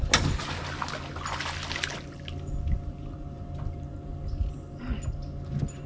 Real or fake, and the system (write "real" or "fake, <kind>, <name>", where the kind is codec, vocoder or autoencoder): real